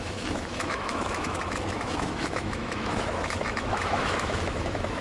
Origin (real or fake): fake